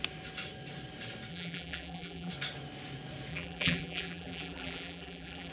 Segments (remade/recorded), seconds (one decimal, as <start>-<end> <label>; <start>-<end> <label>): 0.0-1.3 recorded; 1.3-2.3 remade; 2.3-3.3 recorded; 3.3-5.5 remade

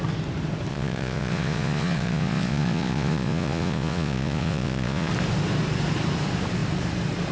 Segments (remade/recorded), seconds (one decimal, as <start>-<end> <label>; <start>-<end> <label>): 0.0-0.7 recorded; 0.7-5.1 remade; 5.1-7.3 recorded